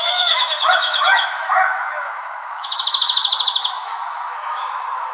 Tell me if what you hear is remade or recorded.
remade